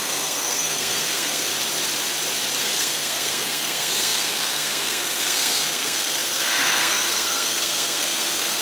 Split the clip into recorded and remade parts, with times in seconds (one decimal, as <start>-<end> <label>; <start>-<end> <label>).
0.0-1.5 remade; 1.5-2.6 recorded; 2.6-8.6 remade